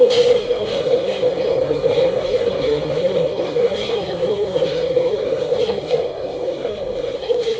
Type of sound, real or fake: fake